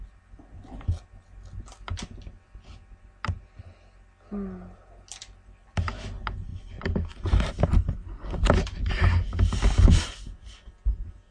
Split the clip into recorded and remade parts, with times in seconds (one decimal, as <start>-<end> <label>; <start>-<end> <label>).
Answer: 0.0-11.3 recorded